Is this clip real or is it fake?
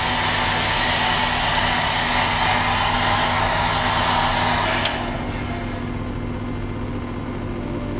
real